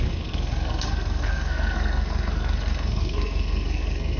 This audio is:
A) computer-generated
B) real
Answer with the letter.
A